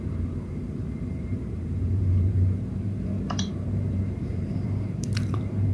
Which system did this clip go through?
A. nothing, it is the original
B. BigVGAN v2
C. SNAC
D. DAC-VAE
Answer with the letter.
B